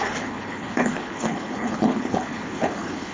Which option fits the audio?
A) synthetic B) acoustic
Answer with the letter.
A